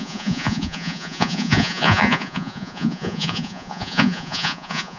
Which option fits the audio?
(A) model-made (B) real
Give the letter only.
A